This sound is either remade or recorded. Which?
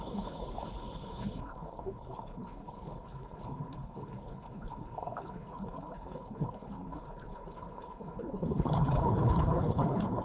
remade